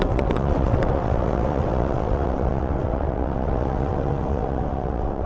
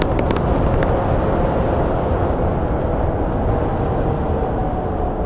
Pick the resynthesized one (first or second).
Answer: first